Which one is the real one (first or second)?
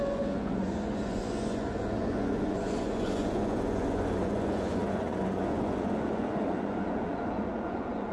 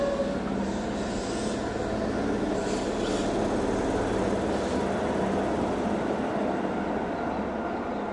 second